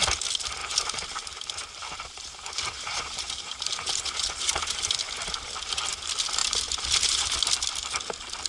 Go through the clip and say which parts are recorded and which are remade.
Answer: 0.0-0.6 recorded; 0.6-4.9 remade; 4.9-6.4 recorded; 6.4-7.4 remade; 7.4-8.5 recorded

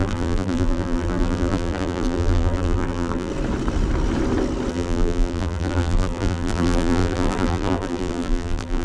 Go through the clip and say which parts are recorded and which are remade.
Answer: 0.0-3.3 remade; 3.3-4.7 recorded; 4.7-8.8 remade

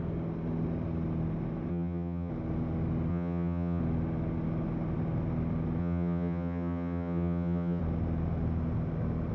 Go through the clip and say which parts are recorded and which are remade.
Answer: 0.0-1.7 recorded; 1.7-2.3 remade; 2.3-3.1 recorded; 3.1-3.8 remade; 3.8-5.8 recorded; 5.8-7.8 remade; 7.8-9.3 recorded

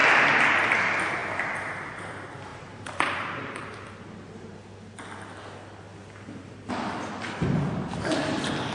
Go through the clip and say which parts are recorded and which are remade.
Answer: 0.0-2.5 recorded; 2.5-3.9 remade; 3.9-5.9 recorded; 5.9-6.7 remade; 6.7-8.7 recorded

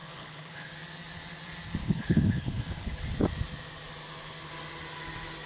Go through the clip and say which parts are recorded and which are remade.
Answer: 0.0-0.7 remade; 0.7-1.8 recorded; 1.8-3.0 remade; 3.0-5.5 recorded

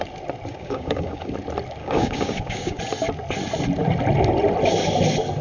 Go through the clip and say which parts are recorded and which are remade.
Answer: 0.0-0.5 recorded; 0.5-1.3 remade; 1.3-1.8 recorded; 1.8-2.8 remade; 2.8-5.4 recorded